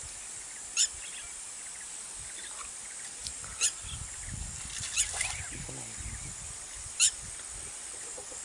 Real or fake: real